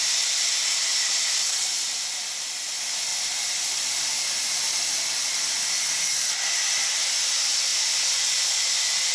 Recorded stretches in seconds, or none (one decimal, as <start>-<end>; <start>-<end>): 0.0-9.1